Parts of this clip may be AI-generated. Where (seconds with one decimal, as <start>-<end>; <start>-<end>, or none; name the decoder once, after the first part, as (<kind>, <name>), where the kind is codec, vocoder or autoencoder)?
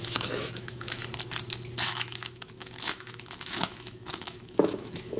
0.0-1.0 (autoencoder, DAC-VAE); 1.8-5.2